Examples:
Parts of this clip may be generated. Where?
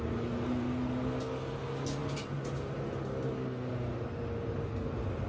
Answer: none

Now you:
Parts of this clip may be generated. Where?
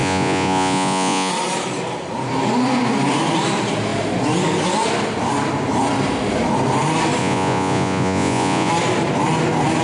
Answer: 0.0-1.3 (vocoder, Vocos); 7.2-8.7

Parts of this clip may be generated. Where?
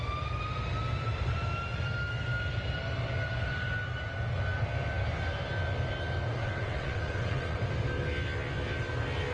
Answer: 6.4-7.6 (vocoder, WaveNeXt)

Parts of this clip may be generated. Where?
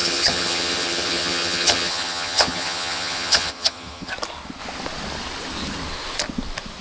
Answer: 0.0-4.1 (vocoder, HiFi-GAN)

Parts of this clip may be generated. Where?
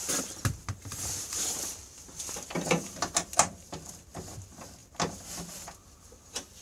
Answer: 0.0-4.0 (vocoder, BigVGAN v2)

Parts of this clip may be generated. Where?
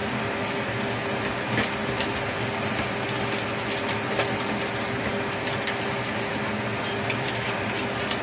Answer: none